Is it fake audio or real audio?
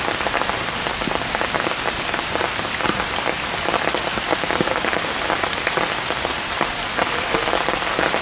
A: real